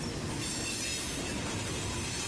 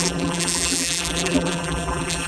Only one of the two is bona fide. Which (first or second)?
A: first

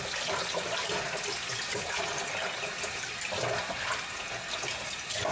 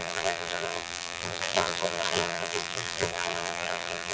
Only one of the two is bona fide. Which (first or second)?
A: first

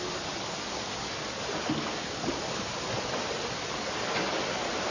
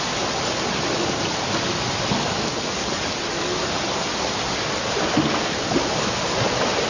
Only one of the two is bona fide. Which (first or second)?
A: second